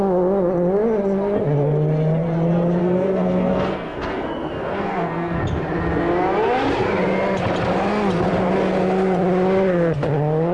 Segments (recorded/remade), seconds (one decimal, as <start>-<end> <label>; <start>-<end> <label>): 0.0-2.8 recorded; 2.8-5.4 remade; 5.4-10.5 recorded

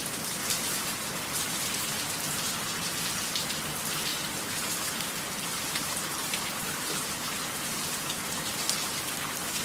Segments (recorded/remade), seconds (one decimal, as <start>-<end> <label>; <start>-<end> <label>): 0.0-0.4 recorded; 0.4-1.7 remade; 1.7-4.1 recorded; 4.1-7.4 remade; 7.4-9.6 recorded

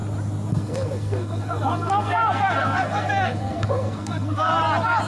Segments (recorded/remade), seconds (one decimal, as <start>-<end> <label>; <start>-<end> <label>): 0.0-0.5 recorded; 0.5-4.5 remade; 4.5-5.1 recorded

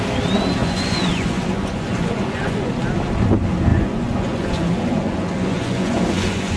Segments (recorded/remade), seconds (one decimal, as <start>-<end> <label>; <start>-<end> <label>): 0.0-0.6 recorded; 0.6-2.7 remade; 2.7-3.7 recorded; 3.7-6.6 remade

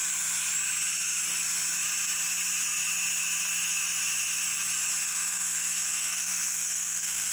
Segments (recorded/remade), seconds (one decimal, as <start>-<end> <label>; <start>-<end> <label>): 0.0-5.0 recorded; 5.0-7.3 remade

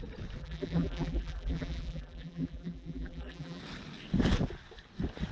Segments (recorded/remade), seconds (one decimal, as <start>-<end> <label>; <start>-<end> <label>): 0.0-0.4 recorded; 0.4-3.6 remade; 3.6-5.3 recorded